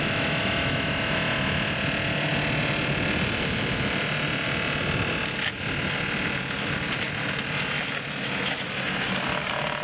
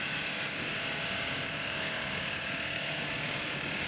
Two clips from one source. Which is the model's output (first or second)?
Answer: second